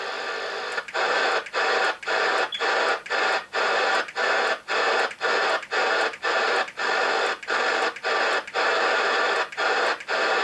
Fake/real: real